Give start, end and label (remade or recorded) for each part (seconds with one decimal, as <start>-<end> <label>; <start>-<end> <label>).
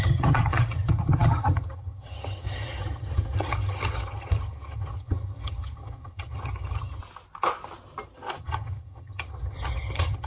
0.0-7.0 remade; 7.0-8.4 recorded; 8.4-10.3 remade